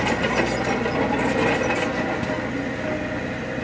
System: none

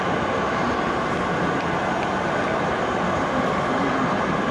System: none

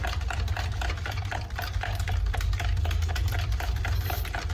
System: vocoder, BigVGAN v2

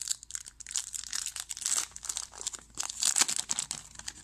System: none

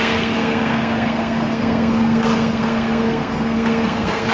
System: codec, SNAC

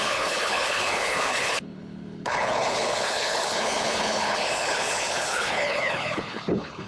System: codec, HILCodec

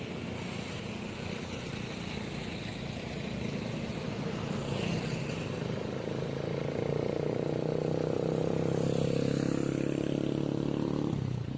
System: none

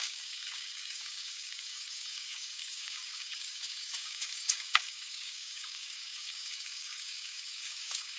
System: codec, DAC